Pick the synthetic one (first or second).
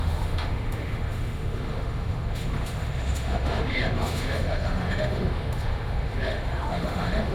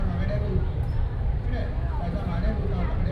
first